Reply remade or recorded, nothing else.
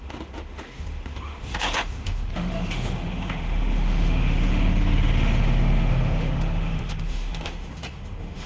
remade